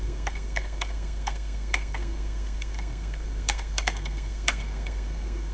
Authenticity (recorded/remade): remade